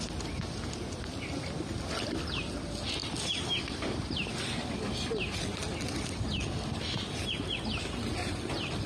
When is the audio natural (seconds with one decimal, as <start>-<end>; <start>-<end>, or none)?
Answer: 0.0-8.9

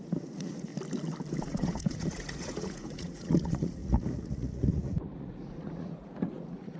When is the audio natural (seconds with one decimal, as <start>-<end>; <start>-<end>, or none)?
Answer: 0.7-1.4

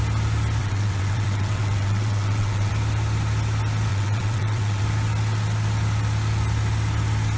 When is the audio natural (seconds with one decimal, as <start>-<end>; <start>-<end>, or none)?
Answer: 0.0-0.6; 2.7-3.9; 4.8-7.4